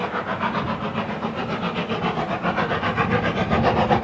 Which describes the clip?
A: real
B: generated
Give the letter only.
A